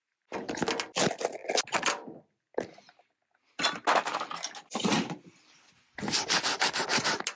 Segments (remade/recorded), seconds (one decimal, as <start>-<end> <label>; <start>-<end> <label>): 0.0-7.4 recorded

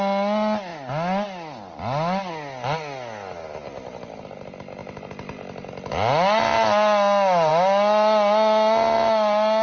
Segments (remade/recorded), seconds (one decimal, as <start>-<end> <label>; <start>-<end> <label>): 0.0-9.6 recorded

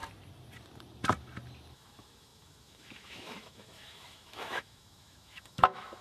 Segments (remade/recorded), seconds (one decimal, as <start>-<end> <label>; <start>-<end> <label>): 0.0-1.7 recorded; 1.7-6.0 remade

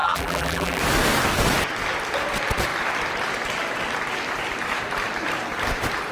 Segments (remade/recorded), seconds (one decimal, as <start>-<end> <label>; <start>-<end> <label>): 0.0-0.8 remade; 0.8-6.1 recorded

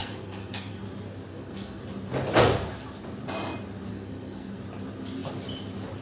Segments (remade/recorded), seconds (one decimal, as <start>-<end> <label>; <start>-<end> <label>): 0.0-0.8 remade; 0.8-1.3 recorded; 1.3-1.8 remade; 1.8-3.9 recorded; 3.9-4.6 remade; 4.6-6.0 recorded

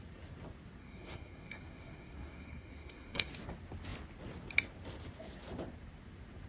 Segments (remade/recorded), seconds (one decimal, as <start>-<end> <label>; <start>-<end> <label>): 0.0-0.8 recorded; 0.8-3.3 remade; 3.3-6.5 recorded